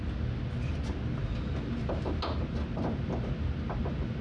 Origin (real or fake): real